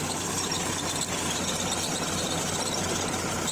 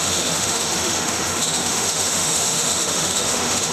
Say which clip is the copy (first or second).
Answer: second